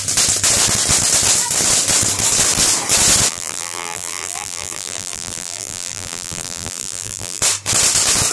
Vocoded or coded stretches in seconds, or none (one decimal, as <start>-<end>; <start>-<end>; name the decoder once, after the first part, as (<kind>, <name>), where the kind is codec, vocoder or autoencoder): 3.3-7.4 (vocoder, BigVGAN v2)